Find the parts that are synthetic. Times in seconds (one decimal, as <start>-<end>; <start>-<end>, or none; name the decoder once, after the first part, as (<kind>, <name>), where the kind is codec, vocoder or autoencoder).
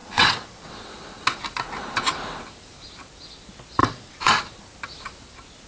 0.0-0.7 (vocoder, WaveNeXt); 3.8-4.4